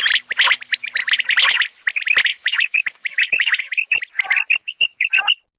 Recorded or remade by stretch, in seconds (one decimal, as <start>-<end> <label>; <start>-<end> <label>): 0.0-2.3 recorded; 2.3-4.0 remade; 4.0-4.6 recorded; 4.6-5.1 remade; 5.1-5.6 recorded